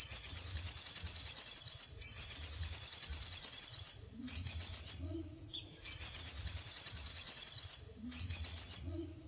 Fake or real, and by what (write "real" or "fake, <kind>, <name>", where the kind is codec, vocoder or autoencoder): fake, vocoder, Vocos